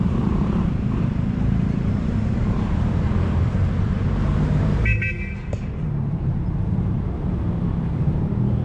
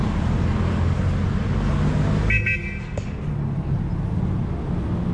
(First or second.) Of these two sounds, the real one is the second